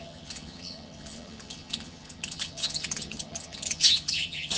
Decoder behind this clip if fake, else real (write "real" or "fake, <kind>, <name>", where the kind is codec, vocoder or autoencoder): fake, vocoder, HiFi-GAN